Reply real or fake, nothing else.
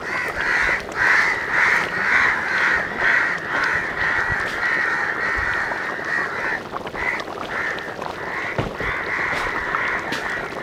real